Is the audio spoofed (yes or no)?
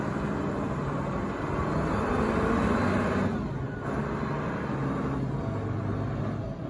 no